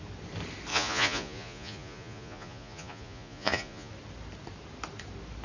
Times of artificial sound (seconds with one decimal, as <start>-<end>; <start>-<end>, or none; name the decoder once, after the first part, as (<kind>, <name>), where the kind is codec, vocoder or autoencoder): 0.7-3.9 (vocoder, Vocos)